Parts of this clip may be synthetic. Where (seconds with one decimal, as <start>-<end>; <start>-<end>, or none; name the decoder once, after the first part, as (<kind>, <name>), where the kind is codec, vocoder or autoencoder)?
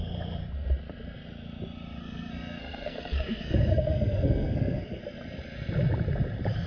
2.0-5.0 (codec, SNAC)